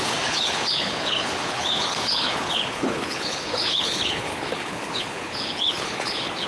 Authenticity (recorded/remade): remade